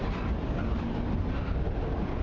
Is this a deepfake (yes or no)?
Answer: no